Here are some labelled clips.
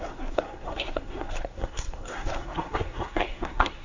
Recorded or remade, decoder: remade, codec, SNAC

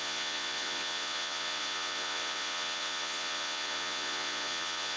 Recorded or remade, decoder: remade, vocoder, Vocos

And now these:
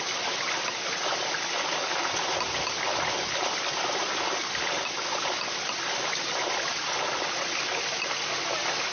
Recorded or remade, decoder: recorded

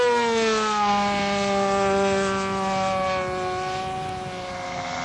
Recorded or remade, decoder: recorded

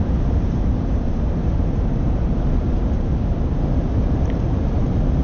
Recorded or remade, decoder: remade, vocoder, BigVGAN v2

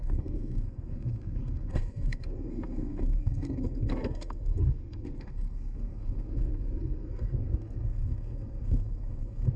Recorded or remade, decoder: remade, codec, SNAC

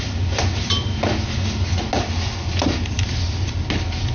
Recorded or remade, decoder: recorded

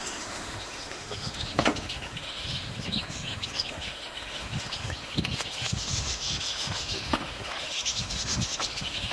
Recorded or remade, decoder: remade, autoencoder, DAC-VAE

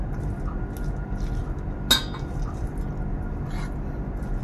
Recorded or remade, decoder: recorded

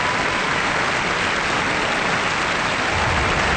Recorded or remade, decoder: recorded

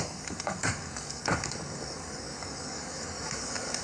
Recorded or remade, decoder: remade, codec, DAC